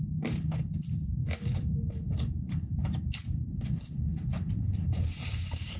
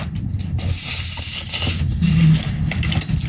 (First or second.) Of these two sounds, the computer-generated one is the first